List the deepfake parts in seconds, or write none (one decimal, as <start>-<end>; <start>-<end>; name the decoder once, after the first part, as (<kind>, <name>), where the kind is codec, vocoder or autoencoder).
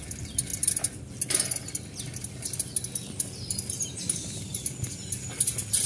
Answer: none